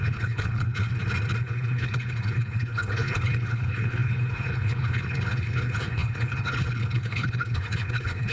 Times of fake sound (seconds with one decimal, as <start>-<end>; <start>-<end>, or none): 0.0-0.9; 1.4-8.3